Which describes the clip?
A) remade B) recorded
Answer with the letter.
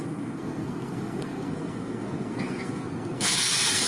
A